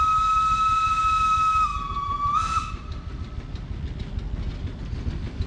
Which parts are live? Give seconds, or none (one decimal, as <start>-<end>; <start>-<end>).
0.0-5.5